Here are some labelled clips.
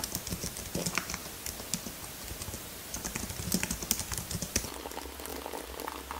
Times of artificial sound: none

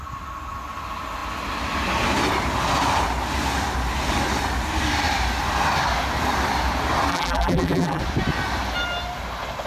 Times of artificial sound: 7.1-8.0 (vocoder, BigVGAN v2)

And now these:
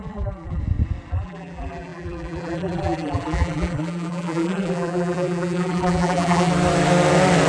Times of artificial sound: 0.0-0.6 (vocoder, BigVGAN v2); 1.1-6.5

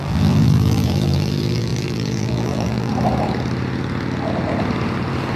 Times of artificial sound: 0.0-2.9 (vocoder, BigVGAN v2)